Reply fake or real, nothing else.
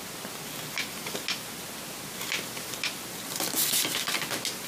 real